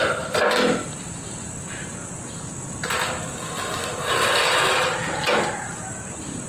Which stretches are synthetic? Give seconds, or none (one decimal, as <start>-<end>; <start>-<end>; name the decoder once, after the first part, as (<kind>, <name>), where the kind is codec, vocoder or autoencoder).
none